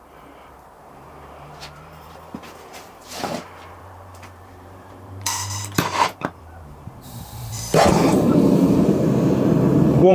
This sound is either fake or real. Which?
fake